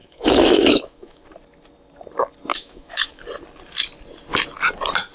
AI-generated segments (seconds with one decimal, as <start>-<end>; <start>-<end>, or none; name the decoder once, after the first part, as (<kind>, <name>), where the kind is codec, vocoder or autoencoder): 0.0-1.2 (autoencoder, DAC-VAE); 2.5-3.2